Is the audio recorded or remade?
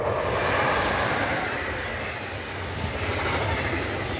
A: recorded